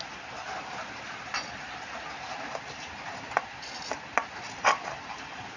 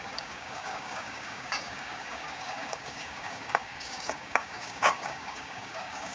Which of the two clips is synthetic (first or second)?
second